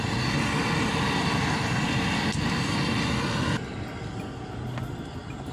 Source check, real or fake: real